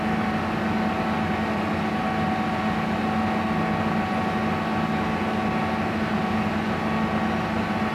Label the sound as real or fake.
real